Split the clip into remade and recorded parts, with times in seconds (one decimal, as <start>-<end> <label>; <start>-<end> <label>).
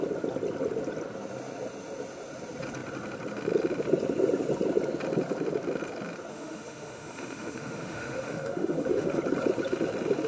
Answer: 0.0-6.3 recorded; 6.3-9.2 remade; 9.2-10.3 recorded